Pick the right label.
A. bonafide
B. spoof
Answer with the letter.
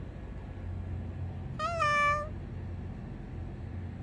A